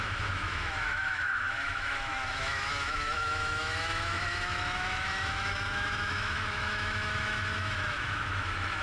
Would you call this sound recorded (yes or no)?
no